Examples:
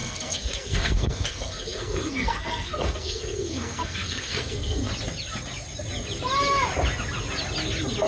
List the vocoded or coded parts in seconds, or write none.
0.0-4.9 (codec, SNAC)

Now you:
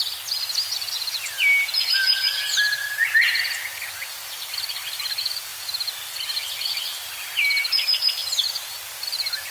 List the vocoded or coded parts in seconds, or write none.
none

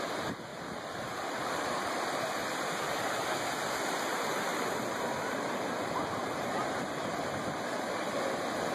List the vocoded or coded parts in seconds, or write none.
0.5-3.0 (vocoder, BigVGAN v2); 4.5-8.1

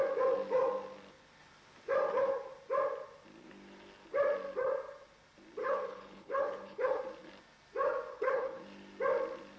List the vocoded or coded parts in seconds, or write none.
5.6-7.0 (codec, HILCodec); 8.1-8.6

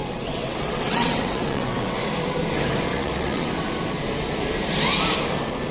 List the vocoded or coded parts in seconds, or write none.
0.0-2.0 (vocoder, WaveNeXt); 2.9-3.5